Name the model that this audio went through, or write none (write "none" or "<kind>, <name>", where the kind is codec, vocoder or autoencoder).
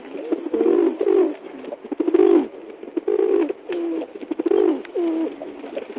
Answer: none